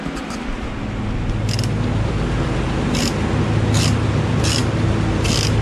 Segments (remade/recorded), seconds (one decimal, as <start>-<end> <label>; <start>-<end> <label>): 0.0-5.6 recorded